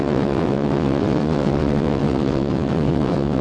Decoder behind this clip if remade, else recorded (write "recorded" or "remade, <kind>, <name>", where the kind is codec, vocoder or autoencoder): remade, vocoder, WaveNeXt